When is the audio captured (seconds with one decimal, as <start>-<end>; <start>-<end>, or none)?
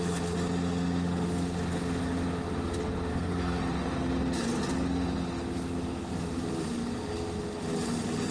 0.0-3.1; 3.6-8.3